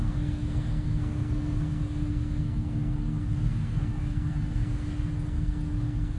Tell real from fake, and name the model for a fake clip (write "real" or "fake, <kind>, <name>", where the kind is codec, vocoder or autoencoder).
fake, codec, SNAC